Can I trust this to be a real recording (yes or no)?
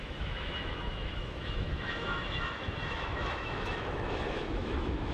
no